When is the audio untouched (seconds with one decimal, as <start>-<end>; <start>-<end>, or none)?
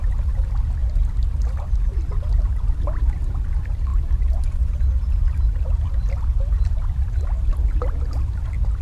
none